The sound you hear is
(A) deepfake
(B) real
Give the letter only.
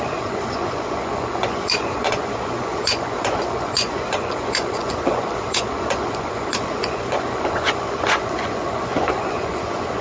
A